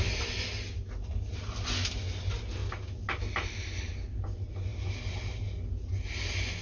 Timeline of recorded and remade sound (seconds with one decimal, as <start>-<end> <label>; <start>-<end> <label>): 0.0-2.6 recorded; 2.6-3.2 remade; 3.2-6.6 recorded